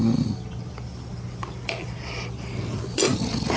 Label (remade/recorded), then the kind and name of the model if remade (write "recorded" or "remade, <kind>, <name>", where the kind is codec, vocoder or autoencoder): recorded